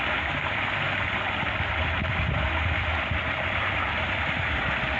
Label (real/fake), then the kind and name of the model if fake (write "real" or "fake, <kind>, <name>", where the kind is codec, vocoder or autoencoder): real